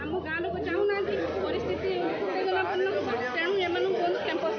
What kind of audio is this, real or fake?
real